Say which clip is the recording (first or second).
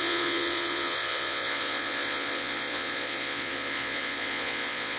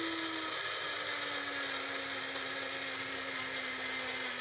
second